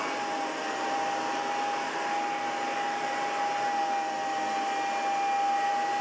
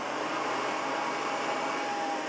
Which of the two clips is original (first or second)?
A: first